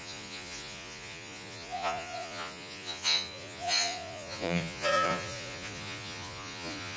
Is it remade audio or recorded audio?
remade